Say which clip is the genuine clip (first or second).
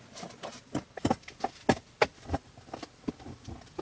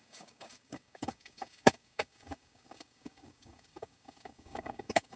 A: first